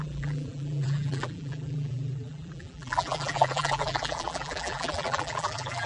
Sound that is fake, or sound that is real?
fake